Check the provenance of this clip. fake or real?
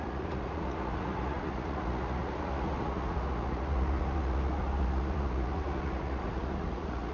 fake